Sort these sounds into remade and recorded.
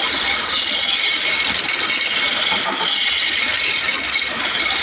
remade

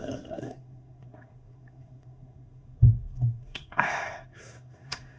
remade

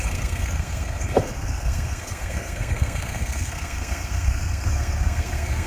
remade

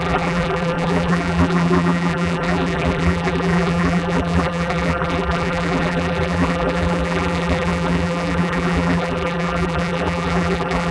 remade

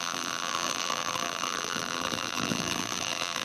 remade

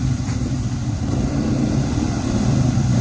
remade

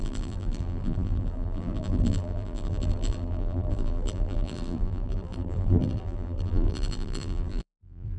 remade